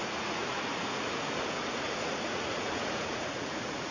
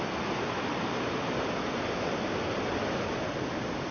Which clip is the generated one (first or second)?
first